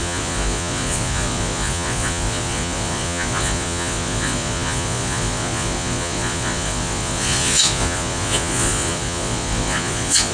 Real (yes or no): no